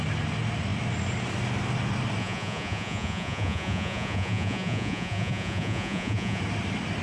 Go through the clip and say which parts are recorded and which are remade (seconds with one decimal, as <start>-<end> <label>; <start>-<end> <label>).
0.0-2.2 recorded; 2.2-6.4 remade; 6.4-7.0 recorded